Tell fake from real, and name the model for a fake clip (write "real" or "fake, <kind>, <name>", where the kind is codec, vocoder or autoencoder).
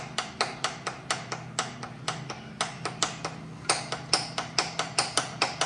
real